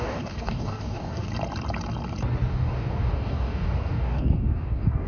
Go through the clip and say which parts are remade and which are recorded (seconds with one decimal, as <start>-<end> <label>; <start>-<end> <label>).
0.0-1.3 remade; 1.3-2.5 recorded; 2.5-5.1 remade